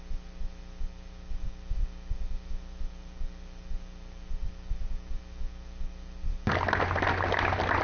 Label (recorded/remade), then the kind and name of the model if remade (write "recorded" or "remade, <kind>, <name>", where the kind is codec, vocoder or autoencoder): recorded